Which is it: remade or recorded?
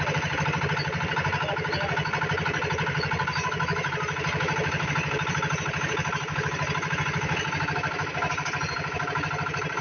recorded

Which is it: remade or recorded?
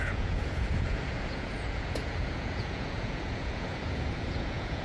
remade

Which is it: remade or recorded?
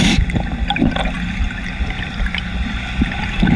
recorded